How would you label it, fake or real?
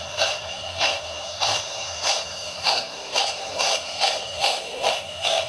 fake